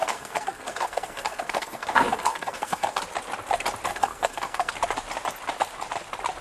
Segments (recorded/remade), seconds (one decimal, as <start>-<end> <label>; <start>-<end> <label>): 0.0-3.0 remade; 3.0-3.9 recorded; 3.9-4.7 remade; 4.7-6.4 recorded